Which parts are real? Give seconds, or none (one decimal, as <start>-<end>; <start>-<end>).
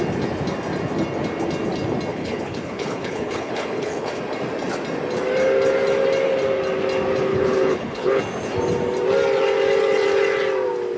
0.0-2.1; 4.1-7.3; 8.2-11.0